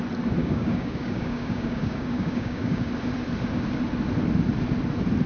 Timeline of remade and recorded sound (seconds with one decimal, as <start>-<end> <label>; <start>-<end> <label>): 0.0-0.4 recorded; 0.4-2.9 remade; 2.9-5.3 recorded